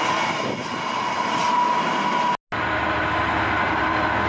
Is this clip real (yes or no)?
yes